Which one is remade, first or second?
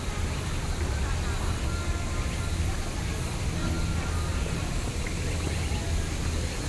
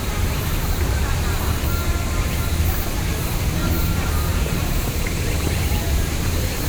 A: second